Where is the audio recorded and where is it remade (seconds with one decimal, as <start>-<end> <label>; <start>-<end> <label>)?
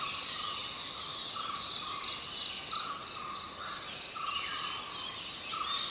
0.0-5.9 recorded